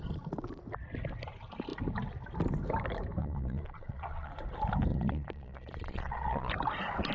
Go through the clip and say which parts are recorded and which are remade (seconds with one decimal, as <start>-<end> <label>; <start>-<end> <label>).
0.0-3.2 recorded; 3.2-4.3 remade; 4.3-4.9 recorded; 4.9-6.5 remade; 6.5-7.1 recorded